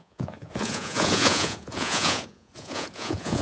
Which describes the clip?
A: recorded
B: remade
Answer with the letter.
B